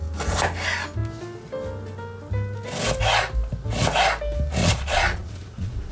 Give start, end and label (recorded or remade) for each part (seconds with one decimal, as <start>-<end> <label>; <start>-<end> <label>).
0.0-4.6 recorded; 4.6-5.9 remade